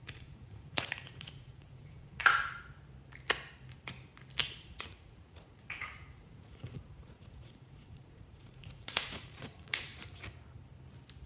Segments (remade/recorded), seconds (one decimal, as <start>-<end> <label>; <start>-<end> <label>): 0.0-2.2 remade; 2.2-4.4 recorded; 4.4-9.9 remade; 9.9-11.3 recorded